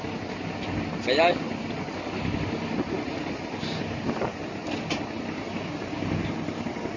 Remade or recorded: recorded